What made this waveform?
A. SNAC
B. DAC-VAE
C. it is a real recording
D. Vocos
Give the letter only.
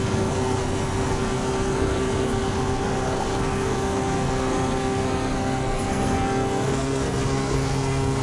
A